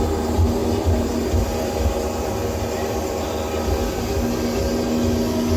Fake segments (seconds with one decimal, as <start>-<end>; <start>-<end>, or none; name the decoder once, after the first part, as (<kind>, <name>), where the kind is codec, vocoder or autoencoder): 0.6-4.0 (vocoder, BigVGAN v2)